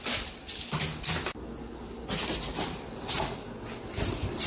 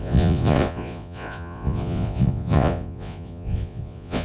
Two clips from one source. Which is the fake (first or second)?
second